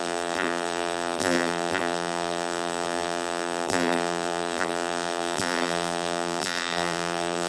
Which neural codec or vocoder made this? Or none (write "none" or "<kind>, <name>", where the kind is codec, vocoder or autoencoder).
vocoder, BigVGAN v2